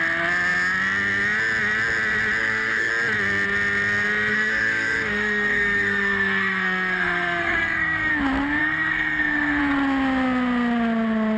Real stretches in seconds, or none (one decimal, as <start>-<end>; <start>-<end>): 0.0-2.4; 2.9-4.3; 8.1-8.6; 9.6-11.4